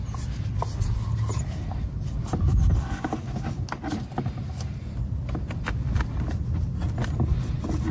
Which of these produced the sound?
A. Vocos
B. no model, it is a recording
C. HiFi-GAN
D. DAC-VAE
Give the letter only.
B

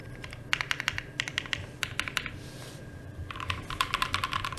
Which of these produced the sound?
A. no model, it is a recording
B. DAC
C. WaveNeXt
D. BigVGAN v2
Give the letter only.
D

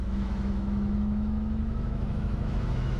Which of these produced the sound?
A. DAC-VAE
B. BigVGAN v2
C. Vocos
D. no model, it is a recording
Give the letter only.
A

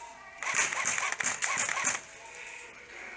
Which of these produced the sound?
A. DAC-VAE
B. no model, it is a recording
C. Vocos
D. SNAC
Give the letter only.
B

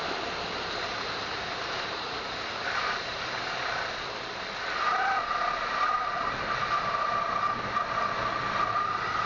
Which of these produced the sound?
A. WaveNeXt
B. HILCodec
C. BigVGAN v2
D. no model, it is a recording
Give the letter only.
D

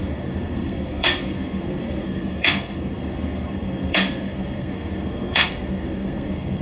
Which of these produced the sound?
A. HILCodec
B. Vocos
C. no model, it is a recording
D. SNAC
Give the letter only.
D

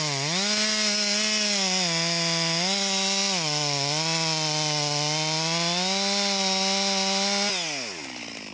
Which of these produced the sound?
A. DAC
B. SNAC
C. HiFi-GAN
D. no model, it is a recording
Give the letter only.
D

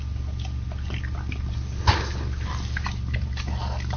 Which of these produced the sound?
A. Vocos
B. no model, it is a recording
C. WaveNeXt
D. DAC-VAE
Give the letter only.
B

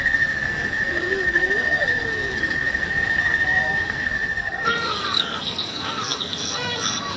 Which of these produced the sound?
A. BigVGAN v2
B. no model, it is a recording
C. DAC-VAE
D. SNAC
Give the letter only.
D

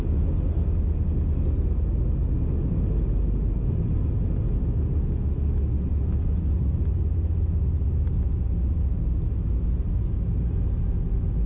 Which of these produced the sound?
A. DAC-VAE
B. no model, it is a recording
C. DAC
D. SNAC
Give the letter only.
B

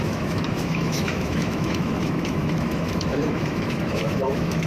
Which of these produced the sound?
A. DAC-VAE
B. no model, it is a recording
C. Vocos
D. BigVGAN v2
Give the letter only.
A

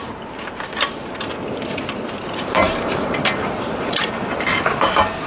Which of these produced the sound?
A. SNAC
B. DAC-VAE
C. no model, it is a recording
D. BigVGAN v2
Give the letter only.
D